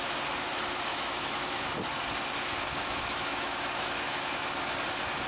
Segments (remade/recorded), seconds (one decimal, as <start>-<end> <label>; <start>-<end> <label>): 0.0-0.9 recorded; 0.9-1.6 remade; 1.6-2.8 recorded; 2.8-4.6 remade; 4.6-5.3 recorded